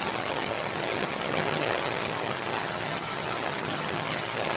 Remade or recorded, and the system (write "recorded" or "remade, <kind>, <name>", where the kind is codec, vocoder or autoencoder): remade, vocoder, HiFi-GAN